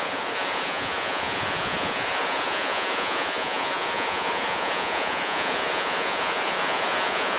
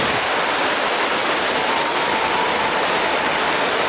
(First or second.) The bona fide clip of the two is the second